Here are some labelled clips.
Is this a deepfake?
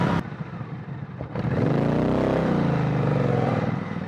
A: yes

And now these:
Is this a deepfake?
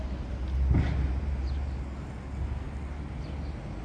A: no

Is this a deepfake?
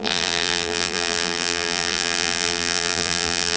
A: yes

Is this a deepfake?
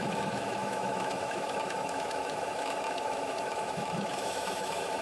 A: yes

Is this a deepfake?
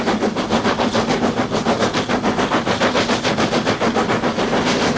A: no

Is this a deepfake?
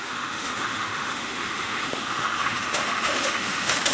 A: yes